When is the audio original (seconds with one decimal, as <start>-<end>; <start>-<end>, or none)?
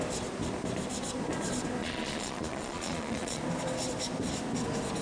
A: 0.0-1.8; 3.4-5.0